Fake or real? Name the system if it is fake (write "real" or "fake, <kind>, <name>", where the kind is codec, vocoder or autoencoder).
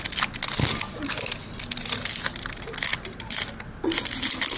real